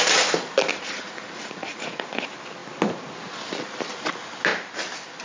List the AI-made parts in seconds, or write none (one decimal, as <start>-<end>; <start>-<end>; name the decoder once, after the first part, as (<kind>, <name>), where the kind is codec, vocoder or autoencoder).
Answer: 0.7-2.2 (vocoder, Vocos)